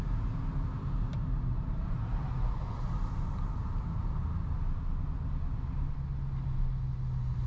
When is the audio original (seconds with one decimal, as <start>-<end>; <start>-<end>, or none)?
0.0-7.5